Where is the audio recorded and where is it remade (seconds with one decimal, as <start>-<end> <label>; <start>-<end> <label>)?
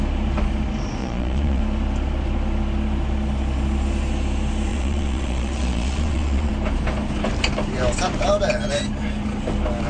0.0-1.0 recorded; 1.0-1.6 remade; 1.6-4.7 recorded; 4.7-6.5 remade; 6.5-9.9 recorded